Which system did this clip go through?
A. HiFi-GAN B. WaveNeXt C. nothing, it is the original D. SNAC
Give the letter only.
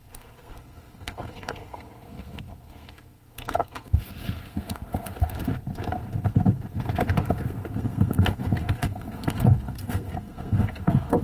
D